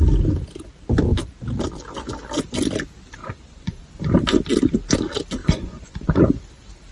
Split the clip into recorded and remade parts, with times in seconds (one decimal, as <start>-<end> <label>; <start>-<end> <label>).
0.0-3.2 recorded; 3.2-4.0 remade; 4.0-5.4 recorded; 5.4-6.4 remade; 6.4-6.9 recorded